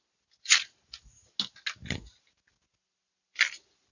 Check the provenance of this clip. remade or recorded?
recorded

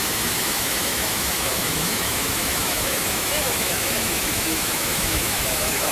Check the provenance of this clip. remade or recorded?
remade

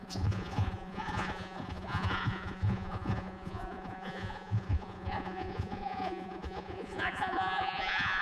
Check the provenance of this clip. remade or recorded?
remade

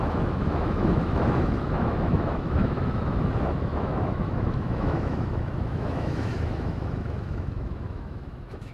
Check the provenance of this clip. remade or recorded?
remade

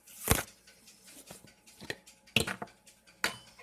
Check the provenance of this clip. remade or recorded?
recorded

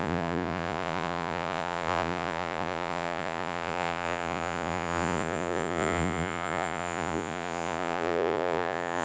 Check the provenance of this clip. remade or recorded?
remade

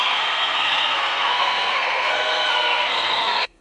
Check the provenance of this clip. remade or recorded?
remade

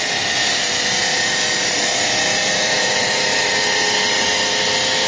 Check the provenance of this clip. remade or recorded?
recorded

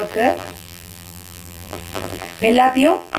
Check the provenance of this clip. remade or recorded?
remade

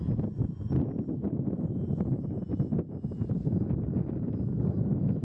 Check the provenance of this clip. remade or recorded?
recorded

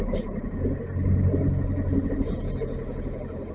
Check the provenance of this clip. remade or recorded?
recorded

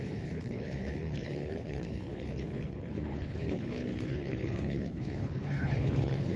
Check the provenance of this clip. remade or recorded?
remade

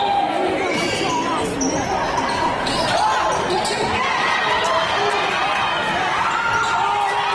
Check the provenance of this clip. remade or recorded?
recorded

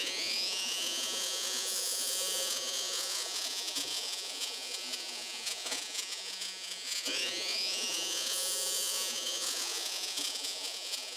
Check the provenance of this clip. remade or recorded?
remade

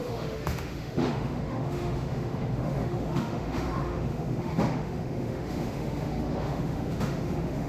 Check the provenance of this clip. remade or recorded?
remade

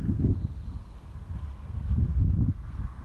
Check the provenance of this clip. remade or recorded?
remade